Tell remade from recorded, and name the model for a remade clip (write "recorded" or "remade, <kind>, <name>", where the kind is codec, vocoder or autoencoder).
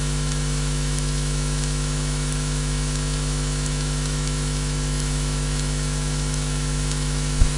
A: remade, autoencoder, DAC-VAE